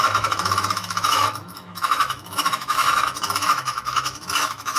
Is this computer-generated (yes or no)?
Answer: yes